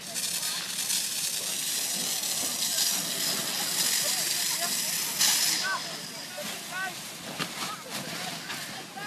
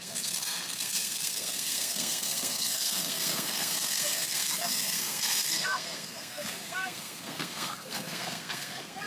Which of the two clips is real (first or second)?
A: first